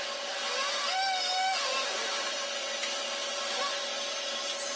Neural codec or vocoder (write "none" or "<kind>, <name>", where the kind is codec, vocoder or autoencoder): none